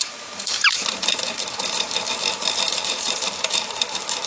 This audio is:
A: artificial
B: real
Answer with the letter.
A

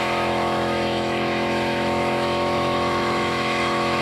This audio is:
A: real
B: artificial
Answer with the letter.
B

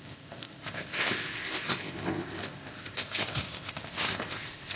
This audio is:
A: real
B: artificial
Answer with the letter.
B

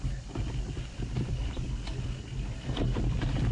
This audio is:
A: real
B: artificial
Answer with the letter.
A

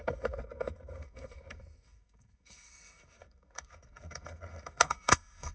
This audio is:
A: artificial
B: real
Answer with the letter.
A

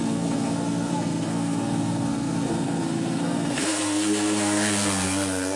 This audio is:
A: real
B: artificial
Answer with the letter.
B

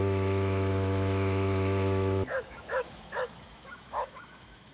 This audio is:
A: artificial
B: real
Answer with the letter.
A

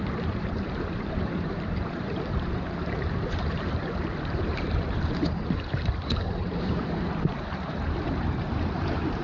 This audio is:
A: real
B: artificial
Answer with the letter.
B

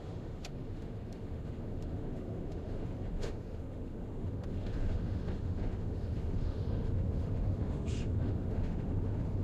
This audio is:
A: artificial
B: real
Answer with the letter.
A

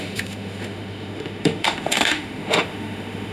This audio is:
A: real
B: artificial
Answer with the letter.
B